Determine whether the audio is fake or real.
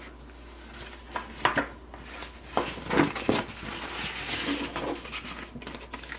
real